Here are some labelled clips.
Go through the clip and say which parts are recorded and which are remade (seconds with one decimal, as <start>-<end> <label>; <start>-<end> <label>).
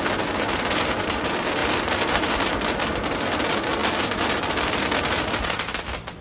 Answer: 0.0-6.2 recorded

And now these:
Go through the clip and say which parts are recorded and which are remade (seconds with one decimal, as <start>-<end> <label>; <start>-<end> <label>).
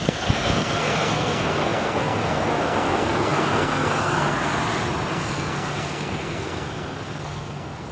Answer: 0.0-4.5 remade; 4.5-5.1 recorded; 5.1-7.9 remade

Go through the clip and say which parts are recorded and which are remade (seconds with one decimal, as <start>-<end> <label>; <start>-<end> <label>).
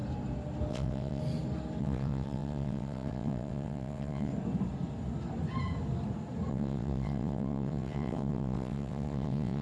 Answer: 0.0-0.7 recorded; 0.7-1.2 remade; 1.2-1.8 recorded; 1.8-4.3 remade; 4.3-6.5 recorded; 6.5-9.6 remade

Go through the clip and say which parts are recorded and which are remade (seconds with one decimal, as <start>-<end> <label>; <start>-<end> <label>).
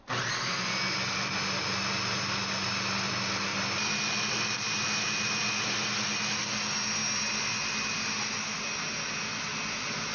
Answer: 0.0-10.1 recorded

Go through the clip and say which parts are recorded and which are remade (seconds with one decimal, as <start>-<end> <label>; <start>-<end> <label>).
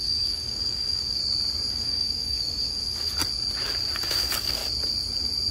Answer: 0.0-1.2 remade; 1.2-1.7 recorded; 1.7-3.2 remade; 3.2-4.1 recorded; 4.1-4.6 remade; 4.6-5.5 recorded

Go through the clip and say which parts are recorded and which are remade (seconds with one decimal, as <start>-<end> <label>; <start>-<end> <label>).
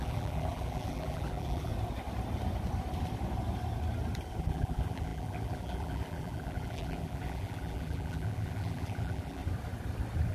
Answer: 0.0-1.7 remade; 1.7-4.4 recorded; 4.4-9.4 remade; 9.4-10.3 recorded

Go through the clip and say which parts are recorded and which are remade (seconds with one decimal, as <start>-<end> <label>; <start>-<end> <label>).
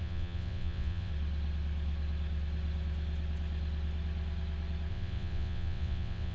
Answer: 0.0-1.1 remade; 1.1-4.9 recorded; 4.9-6.3 remade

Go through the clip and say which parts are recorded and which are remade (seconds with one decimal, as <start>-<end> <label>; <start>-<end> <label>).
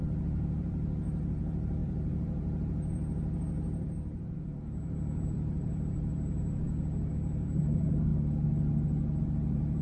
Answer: 0.0-8.1 remade; 8.1-9.2 recorded; 9.2-9.8 remade